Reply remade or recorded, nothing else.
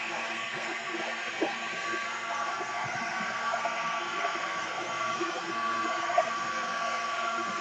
remade